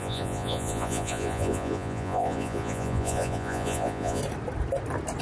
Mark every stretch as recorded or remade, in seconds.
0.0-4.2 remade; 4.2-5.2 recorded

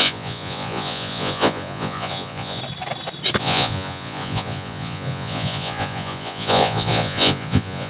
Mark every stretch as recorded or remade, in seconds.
0.0-2.6 remade; 2.6-3.4 recorded; 3.4-7.9 remade